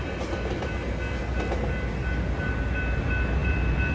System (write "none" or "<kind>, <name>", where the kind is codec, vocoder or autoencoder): none